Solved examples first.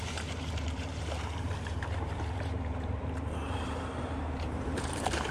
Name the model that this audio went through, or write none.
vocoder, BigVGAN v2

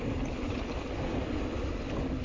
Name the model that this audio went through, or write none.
none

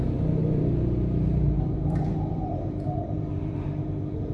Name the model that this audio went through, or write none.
vocoder, BigVGAN v2